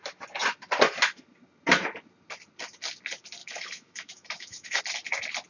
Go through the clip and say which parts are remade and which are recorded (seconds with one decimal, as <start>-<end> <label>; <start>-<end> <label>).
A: 0.0-3.4 recorded; 3.4-4.8 remade; 4.8-5.5 recorded